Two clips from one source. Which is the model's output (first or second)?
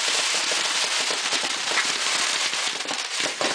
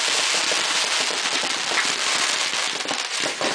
first